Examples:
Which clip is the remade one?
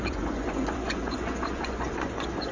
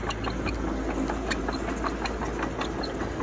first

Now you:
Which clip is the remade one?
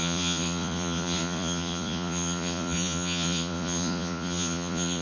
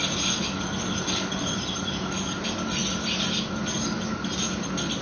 first